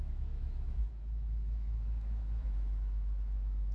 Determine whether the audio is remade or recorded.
remade